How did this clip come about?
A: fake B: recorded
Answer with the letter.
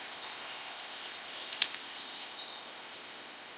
A